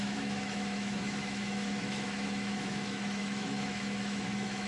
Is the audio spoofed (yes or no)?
yes